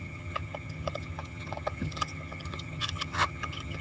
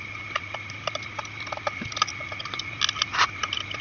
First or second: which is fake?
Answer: first